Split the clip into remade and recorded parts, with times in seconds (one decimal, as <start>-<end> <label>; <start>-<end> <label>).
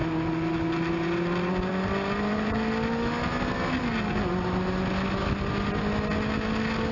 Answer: 0.0-6.9 recorded